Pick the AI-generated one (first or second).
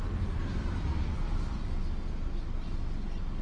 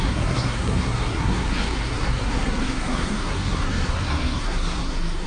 second